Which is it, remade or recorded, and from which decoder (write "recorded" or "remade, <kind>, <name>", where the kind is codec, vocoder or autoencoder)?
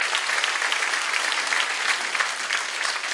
recorded